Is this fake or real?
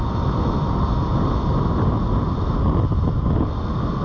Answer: real